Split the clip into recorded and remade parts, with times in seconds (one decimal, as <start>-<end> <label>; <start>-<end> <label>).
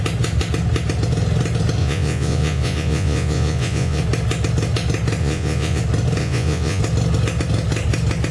0.0-1.8 recorded; 1.8-4.0 remade; 4.0-5.2 recorded; 5.2-5.8 remade; 5.8-6.2 recorded; 6.2-6.8 remade; 6.8-8.3 recorded